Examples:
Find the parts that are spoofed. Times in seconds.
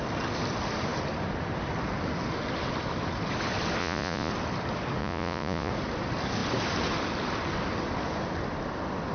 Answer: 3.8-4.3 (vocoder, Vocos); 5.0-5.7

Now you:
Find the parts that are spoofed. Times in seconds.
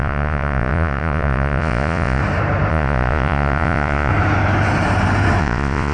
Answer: 0.0-2.2 (vocoder, Vocos); 2.7-4.1; 5.4-5.9